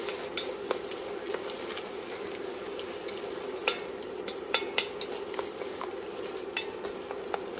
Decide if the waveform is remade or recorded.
recorded